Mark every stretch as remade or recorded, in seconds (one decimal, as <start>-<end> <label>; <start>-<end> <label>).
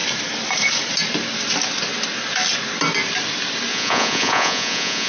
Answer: 0.0-3.7 recorded; 3.7-5.1 remade